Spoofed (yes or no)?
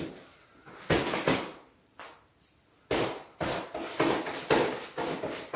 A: no